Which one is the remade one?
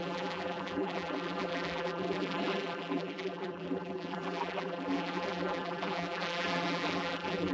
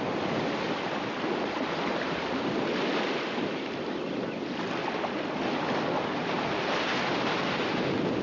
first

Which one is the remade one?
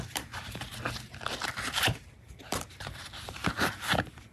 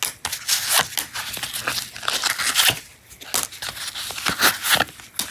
first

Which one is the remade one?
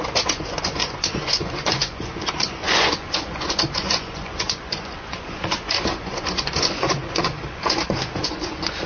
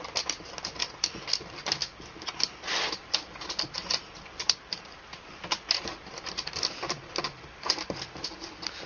first